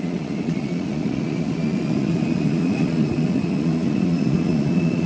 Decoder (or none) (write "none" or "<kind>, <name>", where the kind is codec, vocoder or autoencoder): vocoder, Vocos